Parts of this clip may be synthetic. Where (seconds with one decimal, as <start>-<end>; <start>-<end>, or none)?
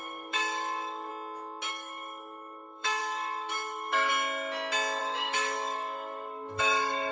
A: 0.0-1.1; 1.7-4.1; 5.0-7.1